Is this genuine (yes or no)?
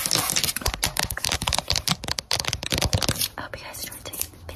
yes